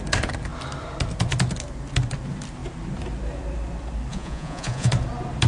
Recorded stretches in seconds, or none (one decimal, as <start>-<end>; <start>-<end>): 0.0-4.1; 4.9-5.5